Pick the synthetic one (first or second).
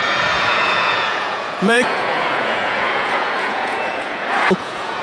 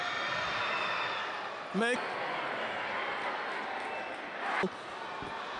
first